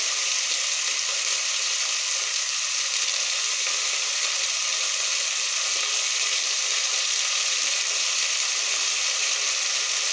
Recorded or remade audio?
recorded